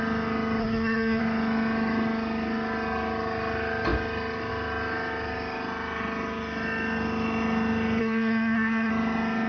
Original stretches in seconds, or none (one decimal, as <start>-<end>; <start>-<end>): 0.0-0.6; 1.2-8.0; 8.9-9.5